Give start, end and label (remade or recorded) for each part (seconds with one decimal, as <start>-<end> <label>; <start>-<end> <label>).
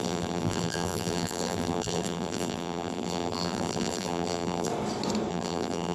0.0-4.7 remade; 4.7-5.3 recorded; 5.3-5.9 remade